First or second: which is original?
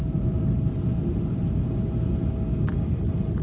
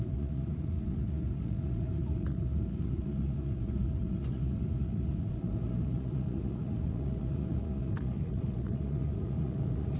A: first